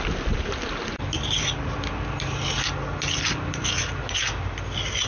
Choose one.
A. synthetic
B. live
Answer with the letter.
B